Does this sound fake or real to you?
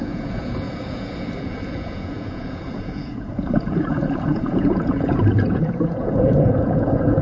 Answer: fake